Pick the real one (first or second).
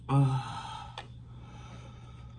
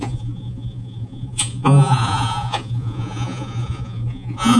first